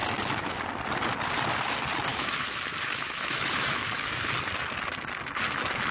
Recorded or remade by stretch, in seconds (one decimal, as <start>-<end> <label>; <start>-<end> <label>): 0.0-0.6 remade; 0.6-2.1 recorded; 2.1-4.3 remade; 4.3-5.9 recorded